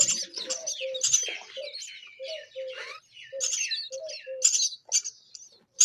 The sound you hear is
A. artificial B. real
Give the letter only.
B